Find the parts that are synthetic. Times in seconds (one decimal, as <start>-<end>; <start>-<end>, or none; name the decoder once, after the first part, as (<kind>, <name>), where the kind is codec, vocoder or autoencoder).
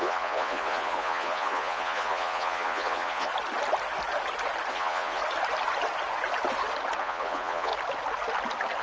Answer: 0.0-3.3 (vocoder, Vocos); 4.7-5.2; 7.0-7.7